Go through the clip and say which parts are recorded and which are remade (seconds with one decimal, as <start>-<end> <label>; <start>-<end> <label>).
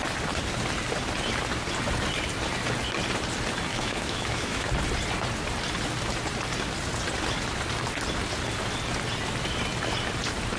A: 0.0-3.7 recorded; 3.7-4.7 remade; 4.7-10.6 recorded